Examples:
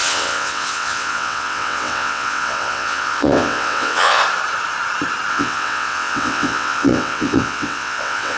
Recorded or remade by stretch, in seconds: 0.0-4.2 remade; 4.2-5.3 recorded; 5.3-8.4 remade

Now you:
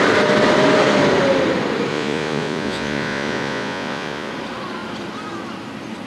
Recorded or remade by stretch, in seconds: 0.0-1.9 recorded; 1.9-4.3 remade; 4.3-6.1 recorded

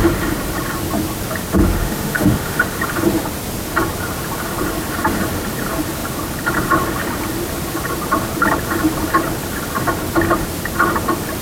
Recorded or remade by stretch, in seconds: 0.0-1.8 recorded; 1.8-2.6 remade; 2.6-11.4 recorded

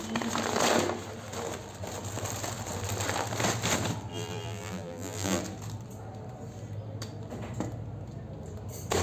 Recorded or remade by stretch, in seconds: 0.0-4.1 recorded; 4.1-5.4 remade; 5.4-9.0 recorded

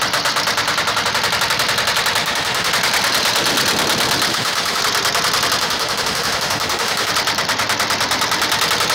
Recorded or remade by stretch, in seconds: 0.0-2.2 recorded; 2.2-2.7 remade; 2.7-4.3 recorded; 4.3-4.8 remade; 4.8-5.6 recorded; 5.6-7.1 remade; 7.1-8.9 recorded

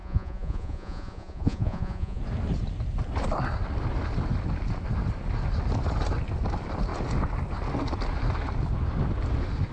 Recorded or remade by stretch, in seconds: 0.0-2.2 remade; 2.2-9.7 recorded

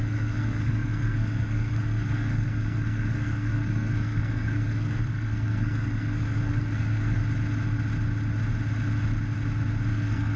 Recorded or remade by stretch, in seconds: 0.0-7.2 remade; 7.2-9.9 recorded; 9.9-10.4 remade

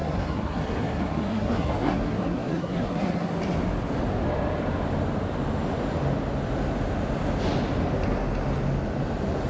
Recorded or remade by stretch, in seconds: 0.0-3.3 remade; 3.3-9.5 recorded